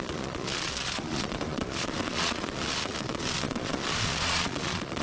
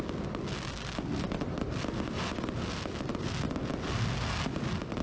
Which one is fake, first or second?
first